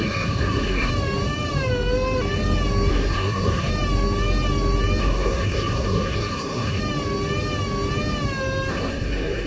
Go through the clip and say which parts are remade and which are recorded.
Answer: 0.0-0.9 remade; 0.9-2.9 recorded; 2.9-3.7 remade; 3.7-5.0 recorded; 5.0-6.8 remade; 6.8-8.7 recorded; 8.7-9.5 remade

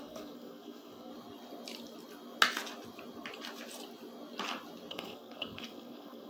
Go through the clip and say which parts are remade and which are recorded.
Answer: 0.0-1.1 remade; 1.1-4.9 recorded; 4.9-6.3 remade

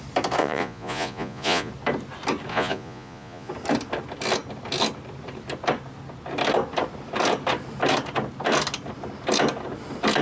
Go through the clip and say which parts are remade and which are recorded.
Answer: 0.0-0.4 recorded; 0.4-1.7 remade; 1.7-2.5 recorded; 2.5-3.5 remade; 3.5-10.2 recorded